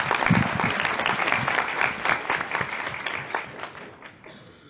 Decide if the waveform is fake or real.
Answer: real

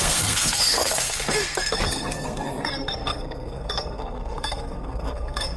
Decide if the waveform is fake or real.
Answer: fake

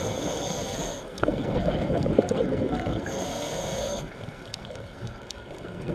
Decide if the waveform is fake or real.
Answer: fake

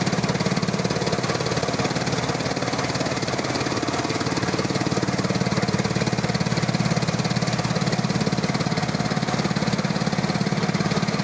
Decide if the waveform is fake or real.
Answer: real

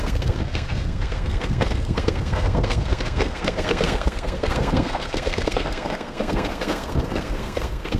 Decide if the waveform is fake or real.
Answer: fake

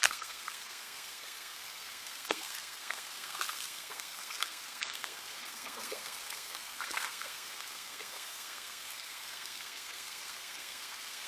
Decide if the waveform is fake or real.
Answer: fake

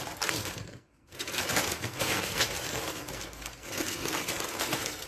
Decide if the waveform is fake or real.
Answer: fake